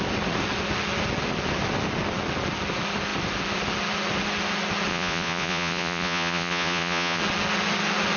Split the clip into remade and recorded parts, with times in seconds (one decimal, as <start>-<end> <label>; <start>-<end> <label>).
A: 0.0-4.9 recorded; 4.9-7.2 remade; 7.2-8.2 recorded